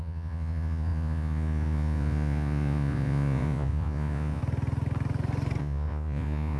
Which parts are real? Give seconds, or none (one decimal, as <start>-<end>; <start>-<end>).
4.4-5.6